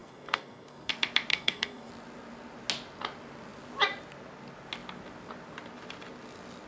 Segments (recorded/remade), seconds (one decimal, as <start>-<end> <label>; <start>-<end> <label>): 0.0-0.9 remade; 0.9-1.3 recorded; 1.3-1.9 remade; 1.9-6.7 recorded